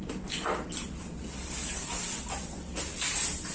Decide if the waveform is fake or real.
real